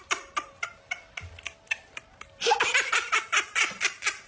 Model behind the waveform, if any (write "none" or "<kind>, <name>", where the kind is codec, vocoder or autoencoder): none